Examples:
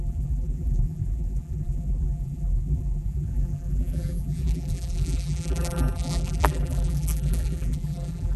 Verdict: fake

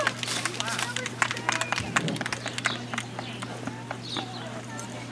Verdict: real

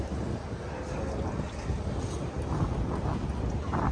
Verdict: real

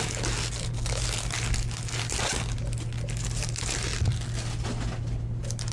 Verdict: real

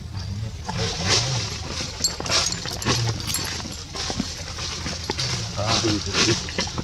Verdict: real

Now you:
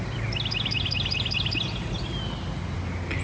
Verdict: real